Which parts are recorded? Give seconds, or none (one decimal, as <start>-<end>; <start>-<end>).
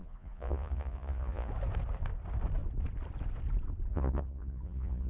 1.5-3.9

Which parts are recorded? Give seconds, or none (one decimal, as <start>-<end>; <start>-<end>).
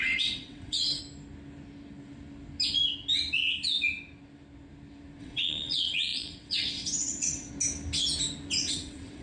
1.0-5.2; 7.5-8.6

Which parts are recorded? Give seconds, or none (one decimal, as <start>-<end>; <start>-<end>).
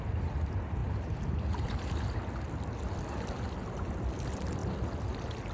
0.0-5.5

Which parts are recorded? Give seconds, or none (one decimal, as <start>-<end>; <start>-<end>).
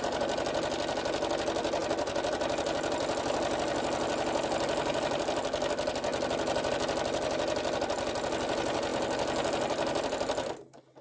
0.0-11.0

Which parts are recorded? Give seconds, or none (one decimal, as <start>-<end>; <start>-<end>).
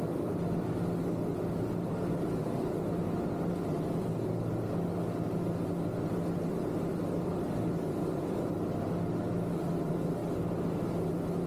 0.0-11.5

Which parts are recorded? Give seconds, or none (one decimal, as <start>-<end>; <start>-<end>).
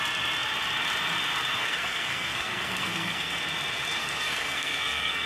0.0-1.6; 3.4-4.0